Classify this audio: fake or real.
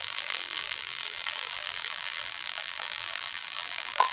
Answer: fake